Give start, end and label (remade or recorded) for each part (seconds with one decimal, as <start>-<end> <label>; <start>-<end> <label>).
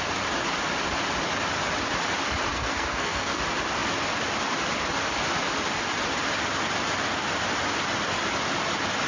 0.0-2.5 recorded; 2.5-3.4 remade; 3.4-9.1 recorded